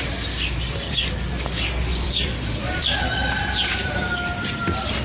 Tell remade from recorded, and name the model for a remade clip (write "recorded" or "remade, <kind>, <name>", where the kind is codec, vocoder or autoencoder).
remade, vocoder, BigVGAN v2